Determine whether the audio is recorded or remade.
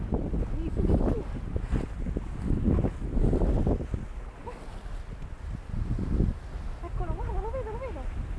recorded